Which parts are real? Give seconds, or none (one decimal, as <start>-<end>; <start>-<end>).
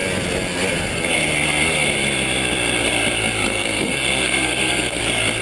0.0-3.5; 5.0-5.4